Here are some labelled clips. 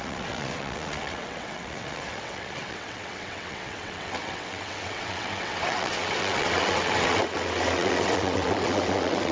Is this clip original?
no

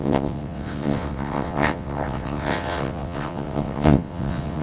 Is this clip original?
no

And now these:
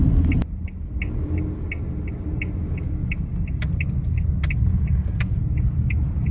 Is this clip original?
yes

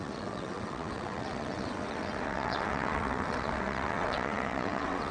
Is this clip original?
no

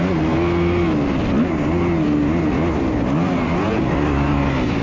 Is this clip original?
yes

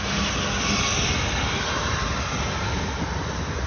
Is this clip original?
yes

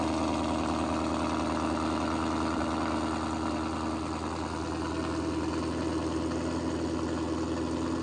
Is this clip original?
yes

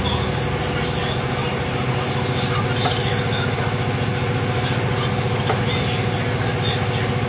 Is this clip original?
yes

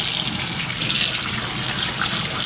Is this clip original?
yes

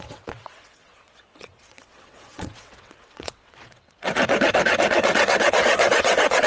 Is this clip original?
no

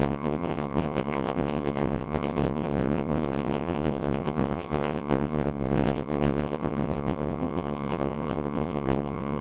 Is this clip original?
no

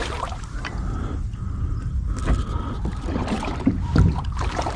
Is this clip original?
yes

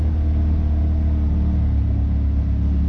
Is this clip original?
yes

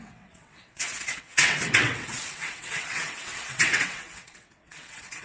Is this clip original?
no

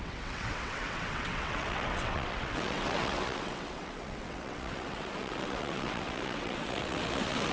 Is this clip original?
no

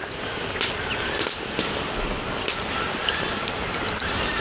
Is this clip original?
yes